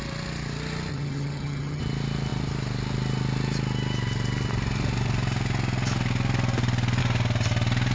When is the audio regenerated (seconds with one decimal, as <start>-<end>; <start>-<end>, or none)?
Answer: 0.9-1.8